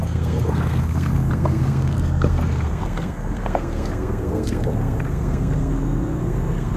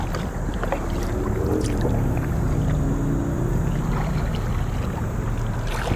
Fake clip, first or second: first